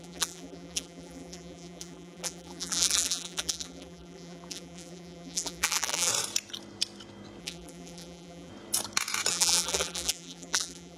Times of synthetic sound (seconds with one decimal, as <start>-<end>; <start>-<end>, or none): 0.0-6.1; 7.4-8.5; 9.3-11.0